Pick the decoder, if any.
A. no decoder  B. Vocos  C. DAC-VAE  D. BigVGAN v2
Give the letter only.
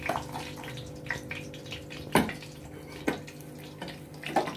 A